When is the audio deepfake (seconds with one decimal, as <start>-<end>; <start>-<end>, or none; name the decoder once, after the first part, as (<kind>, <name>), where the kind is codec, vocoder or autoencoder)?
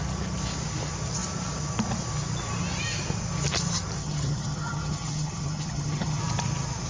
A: 4.0-6.2 (vocoder, HiFi-GAN)